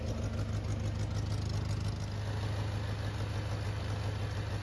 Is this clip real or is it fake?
real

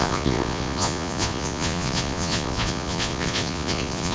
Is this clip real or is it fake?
fake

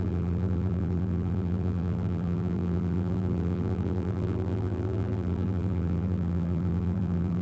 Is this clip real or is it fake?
fake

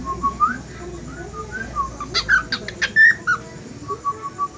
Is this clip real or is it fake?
real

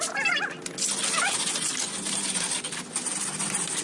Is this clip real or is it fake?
real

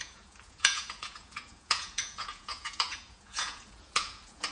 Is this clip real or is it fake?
fake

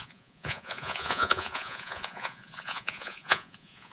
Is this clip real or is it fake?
fake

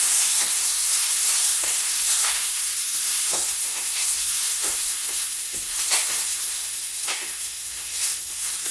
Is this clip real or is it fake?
fake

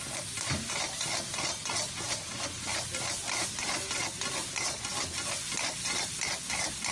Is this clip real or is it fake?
real